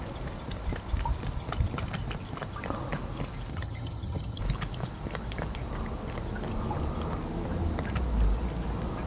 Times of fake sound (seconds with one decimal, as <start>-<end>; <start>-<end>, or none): 3.5-4.4